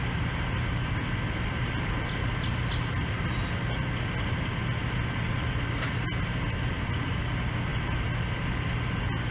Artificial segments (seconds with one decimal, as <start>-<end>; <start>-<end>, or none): none